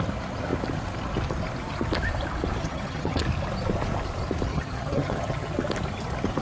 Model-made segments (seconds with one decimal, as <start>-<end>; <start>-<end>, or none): 2.6-3.2; 4.5-5.5